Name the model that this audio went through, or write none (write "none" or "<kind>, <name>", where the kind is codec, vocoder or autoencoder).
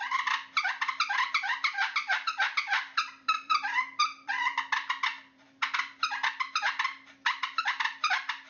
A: vocoder, BigVGAN v2